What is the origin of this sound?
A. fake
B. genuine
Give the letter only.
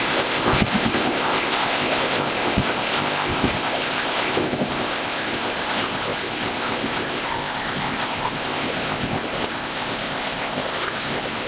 A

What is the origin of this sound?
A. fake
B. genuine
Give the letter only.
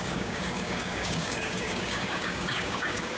A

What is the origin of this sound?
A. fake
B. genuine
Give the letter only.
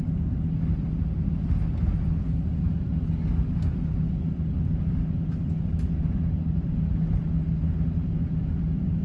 B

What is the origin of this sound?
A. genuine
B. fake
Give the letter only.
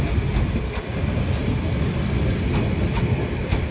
A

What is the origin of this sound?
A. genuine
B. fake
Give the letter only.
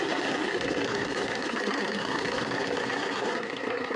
B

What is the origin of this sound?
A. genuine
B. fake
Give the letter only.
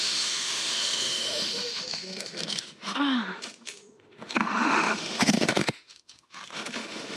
B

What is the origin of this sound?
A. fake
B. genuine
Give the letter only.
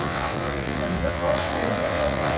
A